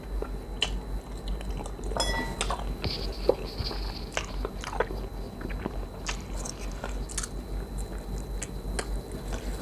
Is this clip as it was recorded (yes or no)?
yes